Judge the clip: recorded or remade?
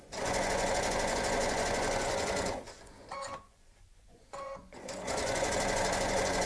remade